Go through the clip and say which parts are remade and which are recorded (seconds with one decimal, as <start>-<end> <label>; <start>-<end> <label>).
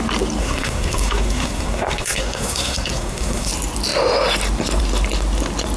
0.0-0.4 recorded; 0.4-3.5 remade; 3.5-5.8 recorded